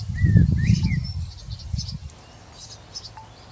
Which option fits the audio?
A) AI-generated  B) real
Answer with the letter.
B